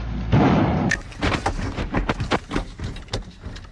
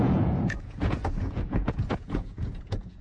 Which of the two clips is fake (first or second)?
second